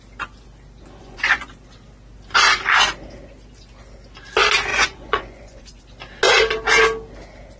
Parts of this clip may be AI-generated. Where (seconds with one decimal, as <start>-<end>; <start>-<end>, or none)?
1.0-1.5; 4.7-5.8